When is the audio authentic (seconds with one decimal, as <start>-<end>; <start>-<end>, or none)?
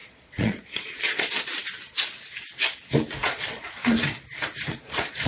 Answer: 1.5-3.2; 3.8-4.7